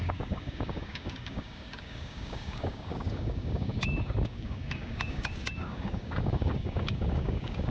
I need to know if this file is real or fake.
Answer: fake